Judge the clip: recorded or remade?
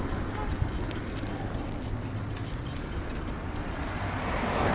recorded